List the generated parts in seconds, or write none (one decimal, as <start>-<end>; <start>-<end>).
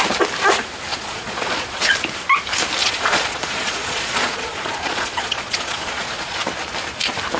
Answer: 0.9-1.9; 2.8-6.4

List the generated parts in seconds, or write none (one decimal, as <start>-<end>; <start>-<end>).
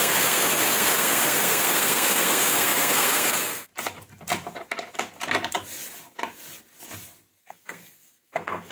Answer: 0.0-3.7; 7.4-8.7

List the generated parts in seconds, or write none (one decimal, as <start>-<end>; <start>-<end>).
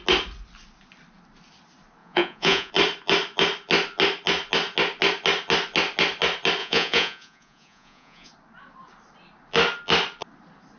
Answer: 2.0-2.7; 6.6-8.3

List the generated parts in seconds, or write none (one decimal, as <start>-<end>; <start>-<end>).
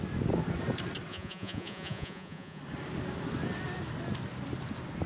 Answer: 1.1-2.6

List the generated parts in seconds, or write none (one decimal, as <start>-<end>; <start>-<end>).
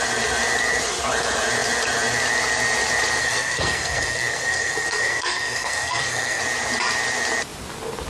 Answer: 3.2-6.4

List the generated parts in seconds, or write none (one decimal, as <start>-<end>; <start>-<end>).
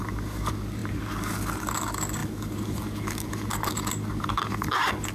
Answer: 0.0-5.1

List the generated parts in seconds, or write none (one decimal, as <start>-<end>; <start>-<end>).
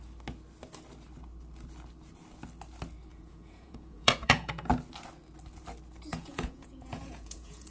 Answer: 3.1-4.7; 6.1-7.7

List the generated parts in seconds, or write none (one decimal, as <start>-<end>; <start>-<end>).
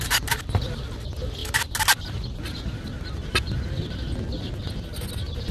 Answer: none